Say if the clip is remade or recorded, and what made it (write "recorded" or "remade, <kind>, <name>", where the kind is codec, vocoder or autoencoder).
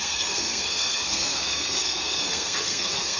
remade, codec, SNAC